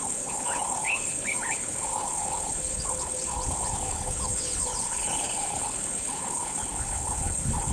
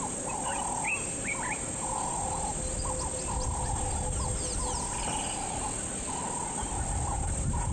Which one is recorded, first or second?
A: second